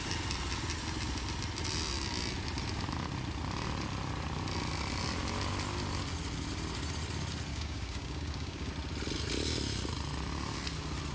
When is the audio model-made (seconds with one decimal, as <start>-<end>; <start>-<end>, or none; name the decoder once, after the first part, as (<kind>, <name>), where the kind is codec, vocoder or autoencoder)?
7.5-8.7 (codec, DAC)